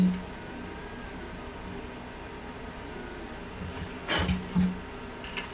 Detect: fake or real real